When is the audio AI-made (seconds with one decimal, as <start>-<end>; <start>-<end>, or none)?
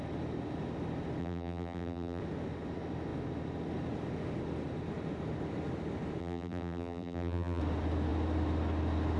1.2-2.2; 6.2-7.6